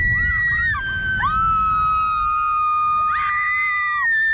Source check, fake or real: real